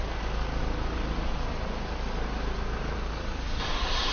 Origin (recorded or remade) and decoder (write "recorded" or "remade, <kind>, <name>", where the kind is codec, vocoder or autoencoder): recorded